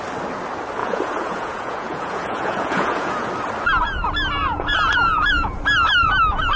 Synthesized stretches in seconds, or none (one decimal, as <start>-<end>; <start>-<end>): 0.8-3.3; 4.4-5.6